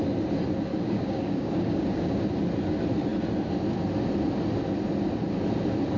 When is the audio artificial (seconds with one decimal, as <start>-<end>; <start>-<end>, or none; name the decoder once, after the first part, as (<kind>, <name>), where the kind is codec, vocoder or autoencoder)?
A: 0.7-2.2 (codec, DAC)